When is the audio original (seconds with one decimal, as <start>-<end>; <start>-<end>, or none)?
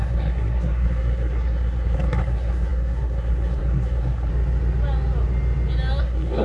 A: 4.3-6.0